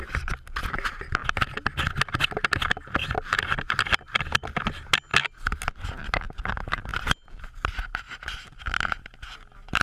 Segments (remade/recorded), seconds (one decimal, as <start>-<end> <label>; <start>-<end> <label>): 0.0-3.0 recorded; 3.0-3.7 remade; 3.7-9.8 recorded

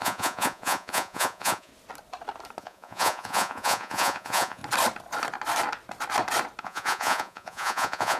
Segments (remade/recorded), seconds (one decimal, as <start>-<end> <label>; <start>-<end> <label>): 0.0-1.7 remade; 1.7-2.6 recorded; 2.6-4.6 remade; 4.6-6.6 recorded; 6.6-8.2 remade

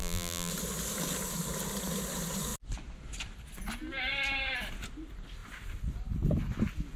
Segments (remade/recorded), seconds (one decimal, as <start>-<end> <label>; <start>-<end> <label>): 0.0-0.5 remade; 0.5-7.0 recorded